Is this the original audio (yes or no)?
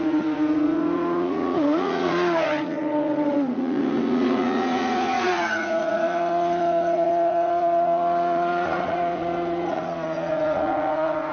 no